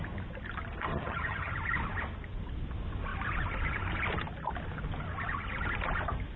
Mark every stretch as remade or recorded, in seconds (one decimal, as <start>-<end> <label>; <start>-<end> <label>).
0.0-0.9 recorded; 0.9-1.5 remade; 1.5-6.4 recorded